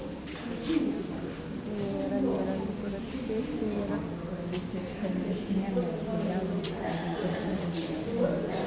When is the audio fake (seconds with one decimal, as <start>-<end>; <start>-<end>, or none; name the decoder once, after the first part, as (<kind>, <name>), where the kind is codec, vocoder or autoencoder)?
7.0-7.9 (vocoder, Vocos)